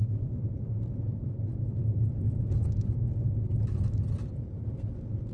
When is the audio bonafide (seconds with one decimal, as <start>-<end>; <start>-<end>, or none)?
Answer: 0.0-5.3